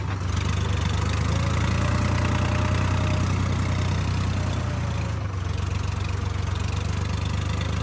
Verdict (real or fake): real